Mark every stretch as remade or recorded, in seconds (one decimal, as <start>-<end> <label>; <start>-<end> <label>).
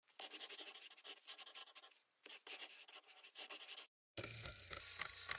0.0-4.1 recorded; 4.1-4.8 remade; 4.8-5.4 recorded